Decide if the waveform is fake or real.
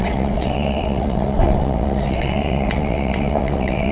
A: fake